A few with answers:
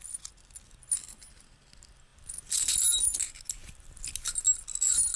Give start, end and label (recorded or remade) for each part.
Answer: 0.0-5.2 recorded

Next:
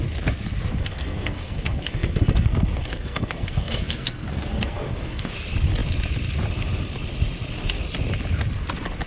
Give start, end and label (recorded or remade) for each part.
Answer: 0.0-0.7 recorded; 0.7-5.3 remade; 5.3-9.1 recorded

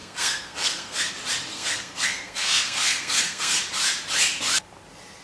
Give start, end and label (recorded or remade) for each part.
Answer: 0.0-1.1 remade; 1.1-1.5 recorded; 1.5-3.6 remade; 3.6-5.2 recorded